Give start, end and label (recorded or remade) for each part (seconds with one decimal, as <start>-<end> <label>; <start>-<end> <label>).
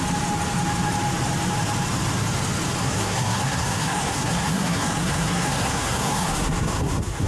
0.0-2.8 recorded; 2.8-7.3 remade